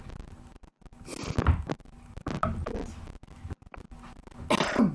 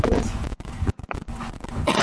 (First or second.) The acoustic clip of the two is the first